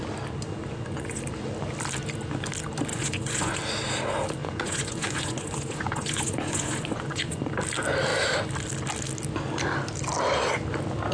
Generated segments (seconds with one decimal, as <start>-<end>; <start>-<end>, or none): 0.6-1.2; 2.9-3.6; 4.4-7.5